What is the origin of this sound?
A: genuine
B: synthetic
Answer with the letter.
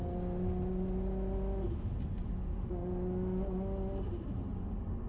A